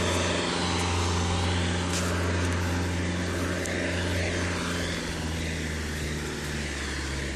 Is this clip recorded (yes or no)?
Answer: yes